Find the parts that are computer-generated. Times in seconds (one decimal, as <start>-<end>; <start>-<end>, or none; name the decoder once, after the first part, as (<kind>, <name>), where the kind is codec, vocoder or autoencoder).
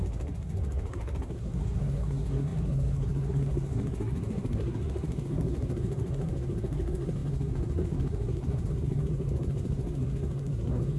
0.0-11.0 (codec, SNAC)